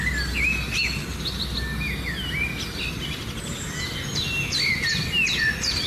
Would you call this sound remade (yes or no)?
no